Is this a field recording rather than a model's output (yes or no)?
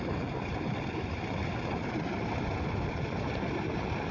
yes